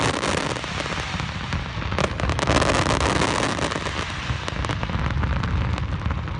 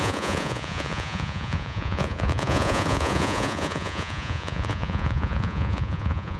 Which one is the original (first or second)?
first